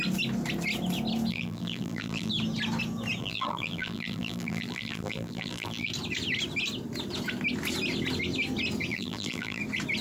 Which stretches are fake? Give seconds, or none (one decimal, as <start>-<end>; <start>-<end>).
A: 1.3-2.3; 3.2-5.9; 8.9-9.6